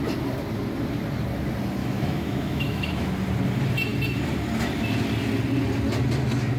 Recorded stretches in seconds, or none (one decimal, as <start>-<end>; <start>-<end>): 0.0-1.8; 3.1-6.6